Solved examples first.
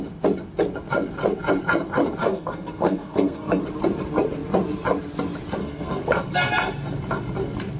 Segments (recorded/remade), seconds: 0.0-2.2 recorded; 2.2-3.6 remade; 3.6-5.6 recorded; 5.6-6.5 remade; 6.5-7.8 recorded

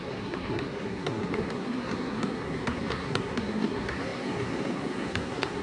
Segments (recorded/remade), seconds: 0.0-5.6 remade

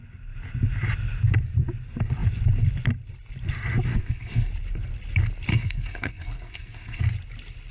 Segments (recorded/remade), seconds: 0.0-3.9 recorded; 3.9-4.5 remade; 4.5-5.5 recorded; 5.5-7.0 remade; 7.0-7.7 recorded